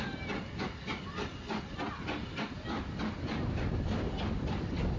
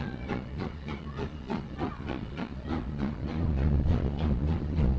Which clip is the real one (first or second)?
first